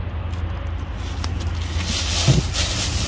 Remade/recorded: recorded